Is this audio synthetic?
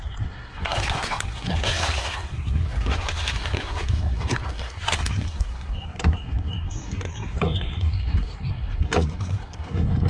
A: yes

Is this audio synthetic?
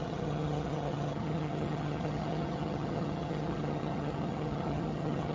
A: yes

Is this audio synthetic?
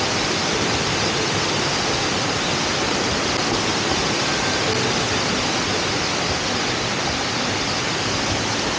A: no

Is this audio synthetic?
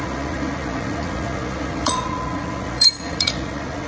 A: yes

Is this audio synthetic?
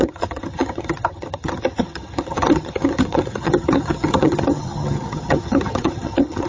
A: yes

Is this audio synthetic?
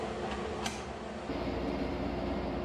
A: no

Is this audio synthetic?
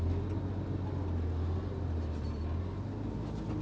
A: no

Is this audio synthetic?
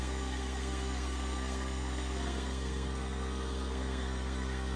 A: yes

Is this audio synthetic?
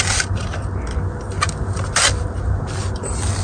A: no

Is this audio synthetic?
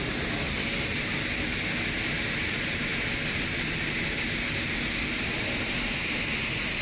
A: no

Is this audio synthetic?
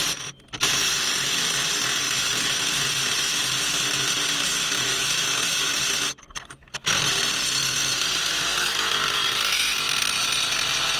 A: no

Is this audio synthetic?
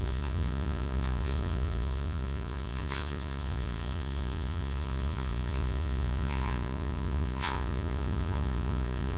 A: yes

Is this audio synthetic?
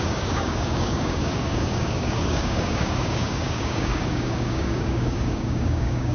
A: yes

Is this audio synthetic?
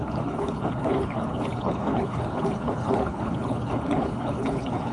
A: yes